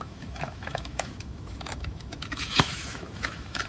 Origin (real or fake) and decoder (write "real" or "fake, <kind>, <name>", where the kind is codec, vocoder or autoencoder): fake, autoencoder, DAC-VAE